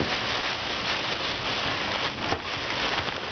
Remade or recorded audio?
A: recorded